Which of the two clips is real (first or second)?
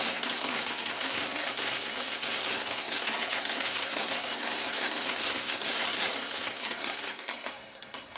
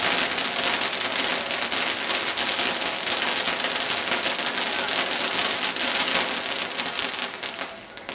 second